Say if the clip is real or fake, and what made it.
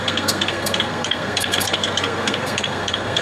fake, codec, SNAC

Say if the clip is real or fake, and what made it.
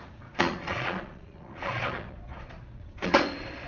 fake, vocoder, Vocos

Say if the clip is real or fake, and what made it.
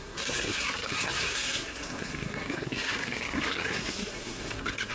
fake, codec, SNAC